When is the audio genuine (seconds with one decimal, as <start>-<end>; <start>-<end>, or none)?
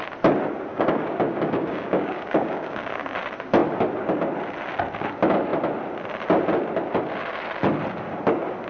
0.0-0.7; 3.1-8.7